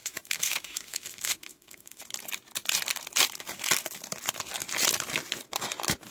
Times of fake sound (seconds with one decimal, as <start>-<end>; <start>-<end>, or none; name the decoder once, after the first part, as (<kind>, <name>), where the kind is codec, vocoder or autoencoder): 0.0-2.0 (autoencoder, DAC-VAE)